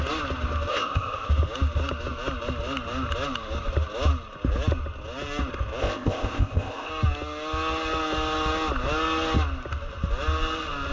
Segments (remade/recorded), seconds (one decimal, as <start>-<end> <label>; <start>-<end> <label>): 0.0-0.7 recorded; 0.7-1.3 remade; 1.3-5.8 recorded; 5.8-6.9 remade; 6.9-10.9 recorded